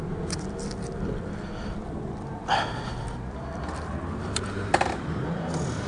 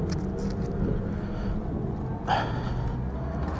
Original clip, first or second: second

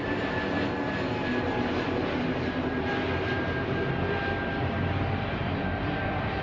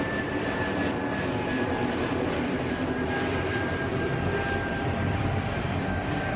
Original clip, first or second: first